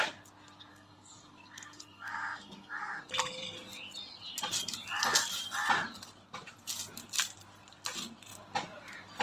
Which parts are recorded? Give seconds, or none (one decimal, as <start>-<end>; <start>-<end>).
0.0-0.7; 3.0-9.2